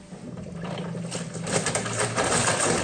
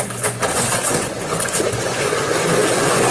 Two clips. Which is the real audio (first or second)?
first